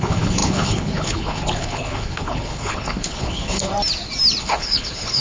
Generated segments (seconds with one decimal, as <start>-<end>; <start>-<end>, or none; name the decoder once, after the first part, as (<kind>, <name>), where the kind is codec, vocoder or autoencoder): 0.0-3.7 (codec, HILCodec); 4.4-5.2

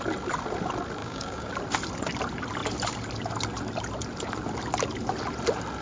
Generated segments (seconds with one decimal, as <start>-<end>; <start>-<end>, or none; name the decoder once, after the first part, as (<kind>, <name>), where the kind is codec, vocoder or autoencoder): 1.0-1.5 (codec, DAC)

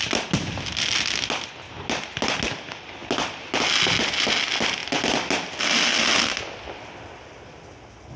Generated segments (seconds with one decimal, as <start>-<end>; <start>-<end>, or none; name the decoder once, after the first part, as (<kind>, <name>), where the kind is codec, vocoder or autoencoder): none

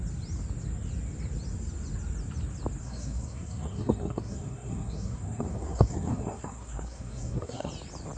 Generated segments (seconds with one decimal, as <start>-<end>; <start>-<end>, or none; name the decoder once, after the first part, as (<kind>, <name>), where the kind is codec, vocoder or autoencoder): 2.8-7.7 (codec, SNAC)

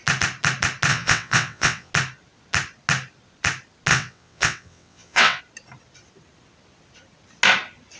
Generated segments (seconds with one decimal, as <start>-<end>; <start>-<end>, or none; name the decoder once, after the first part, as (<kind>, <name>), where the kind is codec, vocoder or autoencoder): 0.9-1.9 (vocoder, WaveNeXt); 3.9-5.4

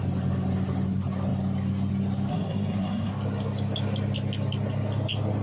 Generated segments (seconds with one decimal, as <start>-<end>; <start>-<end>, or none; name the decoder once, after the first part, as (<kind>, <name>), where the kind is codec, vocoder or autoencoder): 2.3-3.1 (codec, SNAC)

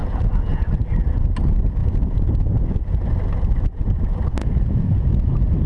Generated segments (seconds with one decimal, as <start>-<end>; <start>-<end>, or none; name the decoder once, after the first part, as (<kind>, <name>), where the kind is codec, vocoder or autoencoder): 0.0-0.7 (vocoder, Vocos); 1.8-2.6; 4.4-5.3